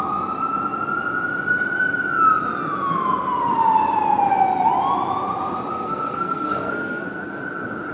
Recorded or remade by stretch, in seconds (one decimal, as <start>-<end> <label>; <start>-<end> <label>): 0.0-5.7 recorded; 5.7-7.4 remade; 7.4-7.9 recorded